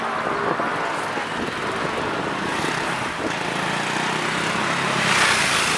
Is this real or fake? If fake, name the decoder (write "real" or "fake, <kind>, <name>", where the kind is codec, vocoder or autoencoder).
real